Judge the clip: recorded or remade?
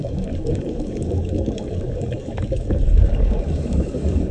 remade